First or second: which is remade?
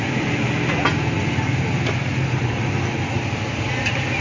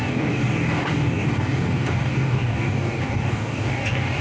second